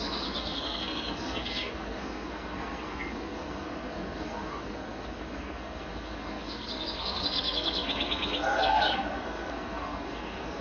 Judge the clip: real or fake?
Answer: fake